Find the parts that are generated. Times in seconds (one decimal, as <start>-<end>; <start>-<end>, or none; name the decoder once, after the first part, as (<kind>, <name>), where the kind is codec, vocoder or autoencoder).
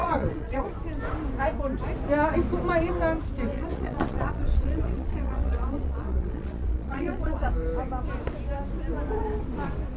0.0-0.7 (vocoder, Vocos); 3.5-7.5